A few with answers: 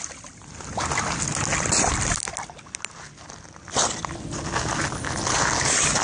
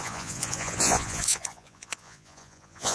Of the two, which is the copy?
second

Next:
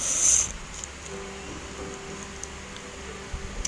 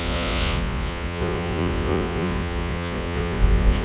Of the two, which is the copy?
second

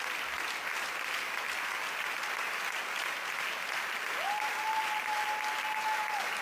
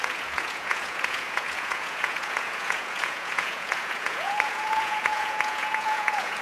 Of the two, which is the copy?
second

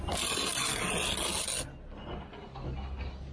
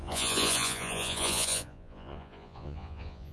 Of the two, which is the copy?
second